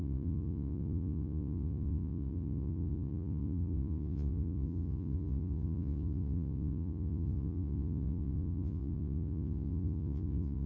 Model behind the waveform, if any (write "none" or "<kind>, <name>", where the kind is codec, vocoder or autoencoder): vocoder, Vocos